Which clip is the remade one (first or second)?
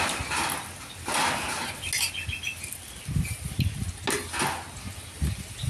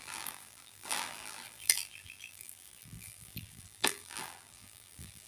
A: second